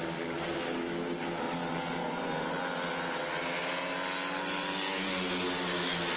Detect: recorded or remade recorded